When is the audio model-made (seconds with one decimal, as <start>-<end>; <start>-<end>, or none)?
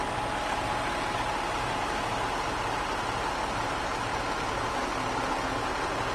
none